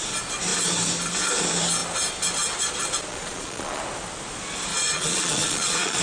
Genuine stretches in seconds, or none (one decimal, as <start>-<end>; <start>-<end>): 0.0-3.1; 3.8-4.7